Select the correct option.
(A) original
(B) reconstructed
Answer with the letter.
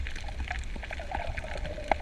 A